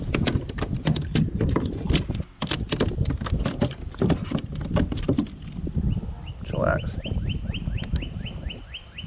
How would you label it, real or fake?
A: real